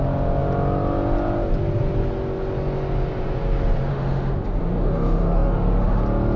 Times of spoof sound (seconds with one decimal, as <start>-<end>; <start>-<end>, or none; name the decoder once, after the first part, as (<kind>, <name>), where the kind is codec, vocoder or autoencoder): 3.9-6.0 (autoencoder, DAC-VAE)